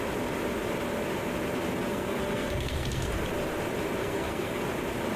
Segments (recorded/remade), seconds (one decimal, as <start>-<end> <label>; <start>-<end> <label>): 0.0-1.9 recorded; 1.9-3.1 remade; 3.1-4.0 recorded; 4.0-4.6 remade; 4.6-5.2 recorded